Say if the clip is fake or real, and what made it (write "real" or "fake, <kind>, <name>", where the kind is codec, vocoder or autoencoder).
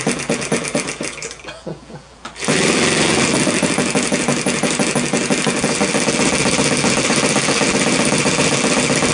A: fake, vocoder, BigVGAN v2